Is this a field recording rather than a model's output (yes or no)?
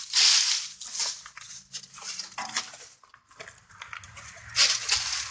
yes